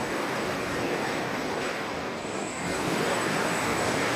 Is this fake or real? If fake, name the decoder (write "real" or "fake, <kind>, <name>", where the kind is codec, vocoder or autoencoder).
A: fake, codec, DAC